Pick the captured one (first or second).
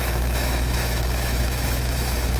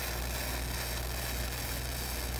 second